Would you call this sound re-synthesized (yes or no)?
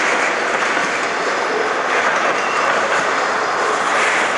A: no